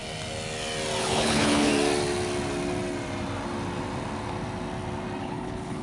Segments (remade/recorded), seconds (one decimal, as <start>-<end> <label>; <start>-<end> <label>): 0.0-1.0 recorded; 1.0-1.7 remade; 1.7-5.2 recorded; 5.2-5.8 remade